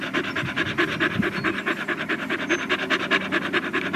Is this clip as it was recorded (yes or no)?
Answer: yes